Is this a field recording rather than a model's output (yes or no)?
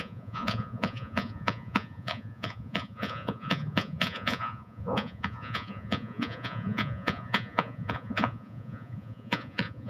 no